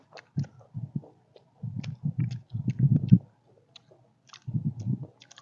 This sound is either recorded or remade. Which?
recorded